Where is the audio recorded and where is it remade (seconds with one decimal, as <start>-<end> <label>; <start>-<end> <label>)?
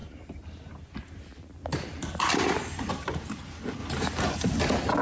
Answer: 0.0-1.2 recorded; 1.2-1.7 remade; 1.7-2.3 recorded; 2.3-3.8 remade; 3.8-5.0 recorded